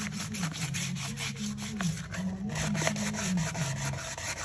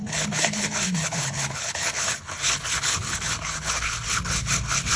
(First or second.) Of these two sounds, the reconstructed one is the second